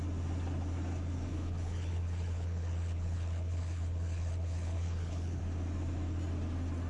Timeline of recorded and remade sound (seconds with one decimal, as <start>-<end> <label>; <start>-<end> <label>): 0.0-1.3 recorded; 1.3-5.4 remade; 5.4-6.9 recorded